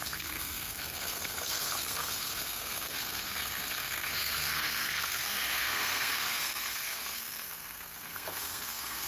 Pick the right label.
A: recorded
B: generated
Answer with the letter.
B